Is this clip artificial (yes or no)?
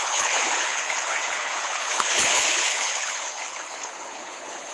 yes